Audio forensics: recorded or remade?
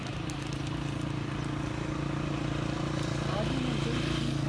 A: recorded